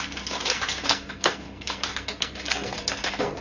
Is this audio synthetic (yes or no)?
yes